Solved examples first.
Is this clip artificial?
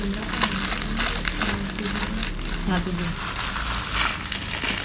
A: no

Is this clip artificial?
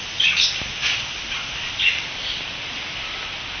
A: no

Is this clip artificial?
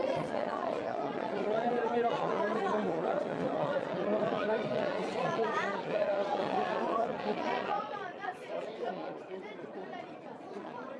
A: yes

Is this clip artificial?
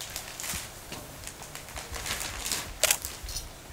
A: no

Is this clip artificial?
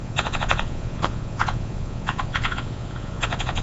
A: yes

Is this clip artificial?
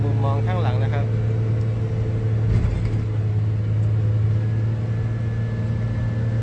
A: no